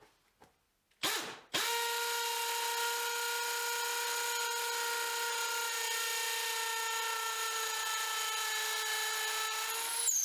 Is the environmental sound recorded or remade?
recorded